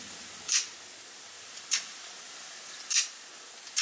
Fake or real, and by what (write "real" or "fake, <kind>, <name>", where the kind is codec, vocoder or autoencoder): real